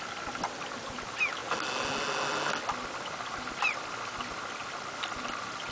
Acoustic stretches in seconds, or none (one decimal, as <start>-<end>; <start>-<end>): 0.0-5.7